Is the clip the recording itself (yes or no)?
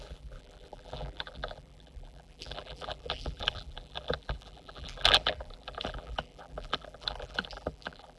no